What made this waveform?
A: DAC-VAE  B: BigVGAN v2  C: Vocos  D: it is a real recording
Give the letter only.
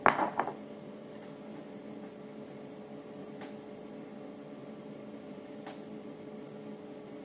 D